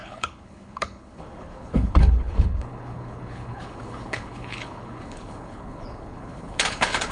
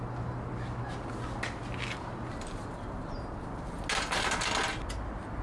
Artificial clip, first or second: first